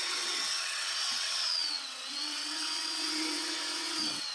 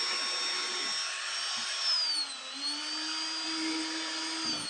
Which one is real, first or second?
second